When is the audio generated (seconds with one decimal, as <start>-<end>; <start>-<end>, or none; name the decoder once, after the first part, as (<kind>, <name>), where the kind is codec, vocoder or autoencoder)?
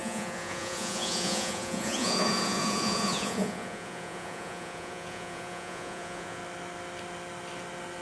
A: 0.0-6.4 (vocoder, Vocos)